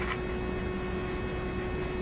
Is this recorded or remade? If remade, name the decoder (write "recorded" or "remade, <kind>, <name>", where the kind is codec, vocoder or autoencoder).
recorded